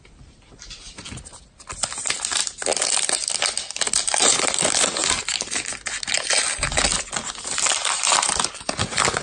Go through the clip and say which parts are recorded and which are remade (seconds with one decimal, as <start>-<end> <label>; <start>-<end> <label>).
0.0-9.2 recorded